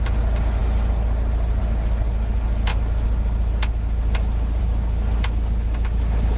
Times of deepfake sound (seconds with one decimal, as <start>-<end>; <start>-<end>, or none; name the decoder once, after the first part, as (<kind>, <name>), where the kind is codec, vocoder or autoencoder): none